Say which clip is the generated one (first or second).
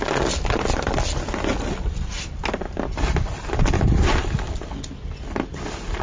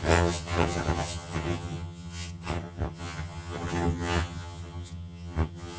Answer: second